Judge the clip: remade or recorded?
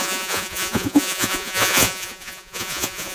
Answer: remade